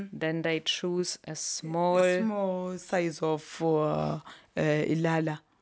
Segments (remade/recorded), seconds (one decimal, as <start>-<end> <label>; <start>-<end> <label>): 0.0-5.6 recorded